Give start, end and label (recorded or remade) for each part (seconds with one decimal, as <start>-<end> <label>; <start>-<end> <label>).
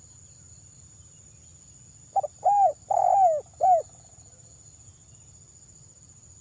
0.0-6.4 recorded